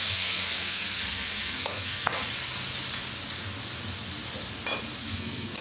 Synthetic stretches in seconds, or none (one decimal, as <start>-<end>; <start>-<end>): 0.0-2.2; 5.0-5.6